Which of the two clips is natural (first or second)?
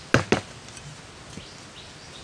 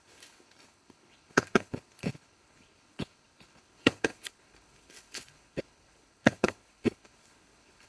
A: first